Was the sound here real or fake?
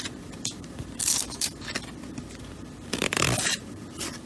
fake